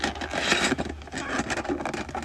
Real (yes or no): yes